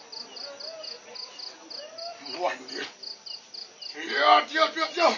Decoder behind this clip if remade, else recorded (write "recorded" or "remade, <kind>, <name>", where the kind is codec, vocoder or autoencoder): recorded